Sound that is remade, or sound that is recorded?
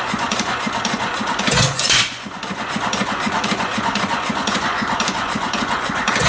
remade